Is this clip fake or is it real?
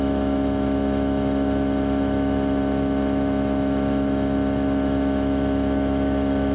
fake